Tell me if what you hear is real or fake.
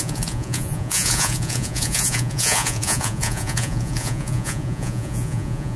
fake